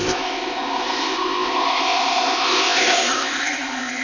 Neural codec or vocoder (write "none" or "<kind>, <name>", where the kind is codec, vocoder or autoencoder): codec, ZipCodec